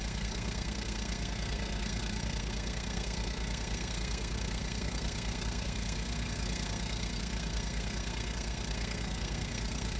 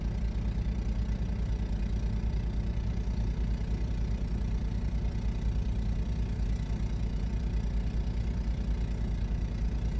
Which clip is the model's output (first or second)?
first